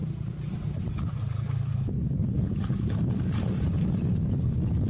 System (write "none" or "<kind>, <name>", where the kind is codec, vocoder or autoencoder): none